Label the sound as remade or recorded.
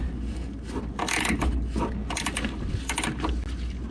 recorded